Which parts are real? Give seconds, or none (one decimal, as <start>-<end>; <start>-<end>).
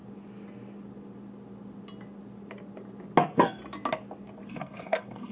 0.0-3.2; 3.6-4.5